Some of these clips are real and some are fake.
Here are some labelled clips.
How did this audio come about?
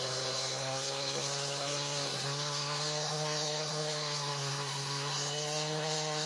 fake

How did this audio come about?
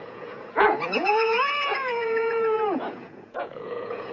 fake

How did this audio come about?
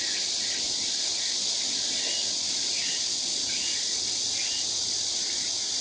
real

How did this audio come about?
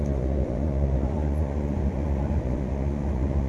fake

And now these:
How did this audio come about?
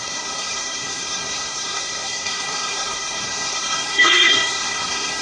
fake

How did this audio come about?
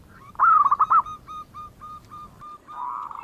fake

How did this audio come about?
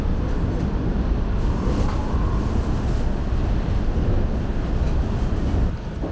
real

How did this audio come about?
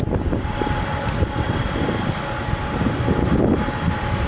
real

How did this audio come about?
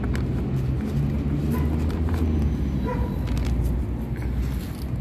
real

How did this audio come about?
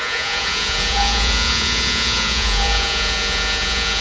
fake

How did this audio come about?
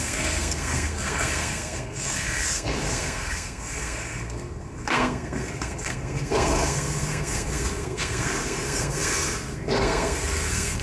fake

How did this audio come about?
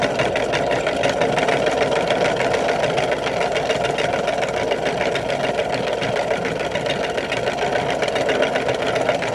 real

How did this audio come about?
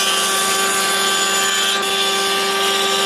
real